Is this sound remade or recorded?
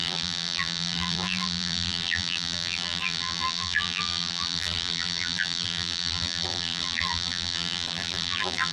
remade